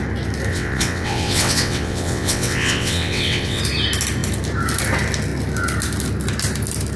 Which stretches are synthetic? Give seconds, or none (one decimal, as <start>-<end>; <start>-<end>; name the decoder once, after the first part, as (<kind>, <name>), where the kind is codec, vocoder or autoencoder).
0.5-3.6 (vocoder, WaveNeXt)